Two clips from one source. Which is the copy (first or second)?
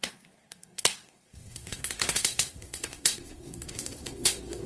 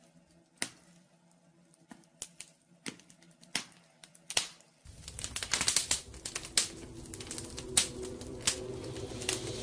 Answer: first